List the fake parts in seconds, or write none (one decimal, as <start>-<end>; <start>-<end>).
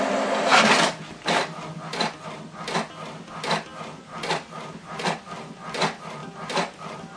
6.2-7.2